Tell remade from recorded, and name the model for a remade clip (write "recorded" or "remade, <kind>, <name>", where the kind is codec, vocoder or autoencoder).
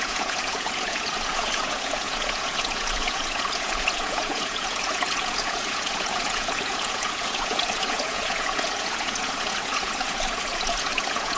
remade, vocoder, Vocos